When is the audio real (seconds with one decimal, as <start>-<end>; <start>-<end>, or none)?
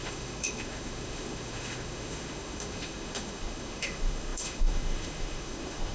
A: none